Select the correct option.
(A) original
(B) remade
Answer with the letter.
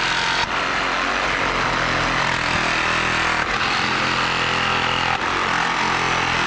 A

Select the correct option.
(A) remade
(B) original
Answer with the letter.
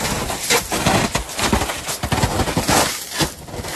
B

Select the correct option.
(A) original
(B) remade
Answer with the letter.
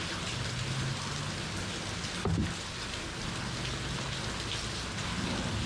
A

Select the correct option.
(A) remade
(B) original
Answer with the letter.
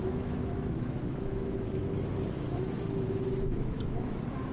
A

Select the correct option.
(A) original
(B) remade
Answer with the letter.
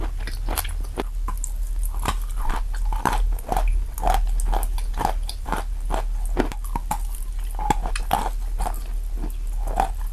A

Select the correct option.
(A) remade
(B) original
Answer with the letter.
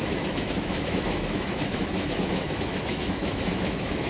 A